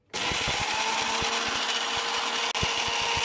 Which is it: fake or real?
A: real